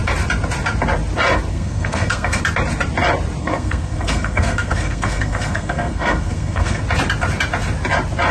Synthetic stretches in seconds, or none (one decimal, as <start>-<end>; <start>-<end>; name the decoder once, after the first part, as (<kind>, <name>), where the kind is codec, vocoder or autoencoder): 1.5-2.4 (codec, SNAC); 3.4-6.8